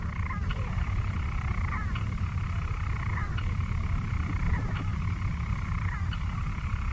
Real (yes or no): no